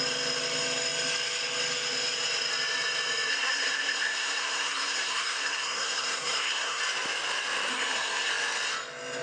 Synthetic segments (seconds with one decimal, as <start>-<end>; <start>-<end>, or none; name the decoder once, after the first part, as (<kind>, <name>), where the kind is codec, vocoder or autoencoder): 3.3-6.8 (codec, SNAC); 7.7-8.3